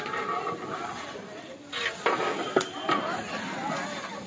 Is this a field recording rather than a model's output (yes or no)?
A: yes